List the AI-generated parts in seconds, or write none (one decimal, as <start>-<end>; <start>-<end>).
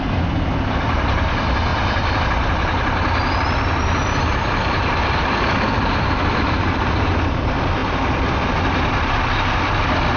none